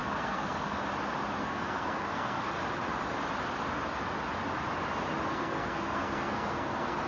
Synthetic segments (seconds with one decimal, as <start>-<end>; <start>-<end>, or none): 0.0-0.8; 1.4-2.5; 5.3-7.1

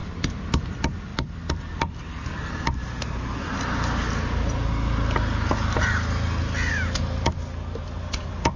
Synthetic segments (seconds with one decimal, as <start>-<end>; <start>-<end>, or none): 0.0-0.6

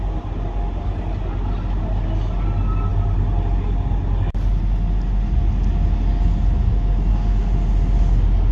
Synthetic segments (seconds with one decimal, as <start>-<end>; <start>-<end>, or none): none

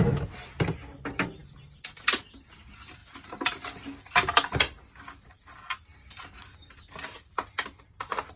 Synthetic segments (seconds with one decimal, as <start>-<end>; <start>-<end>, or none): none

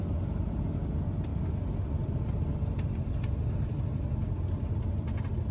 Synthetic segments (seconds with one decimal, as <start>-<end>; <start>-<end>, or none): none

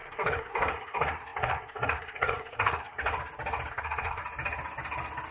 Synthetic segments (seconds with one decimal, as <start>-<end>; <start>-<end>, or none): 0.0-3.1; 3.7-4.2

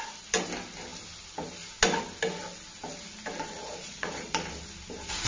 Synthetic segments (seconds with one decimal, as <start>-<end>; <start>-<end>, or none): 3.6-4.4

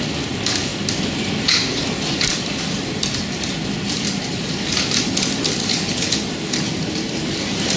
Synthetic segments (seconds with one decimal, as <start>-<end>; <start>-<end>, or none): 5.7-6.2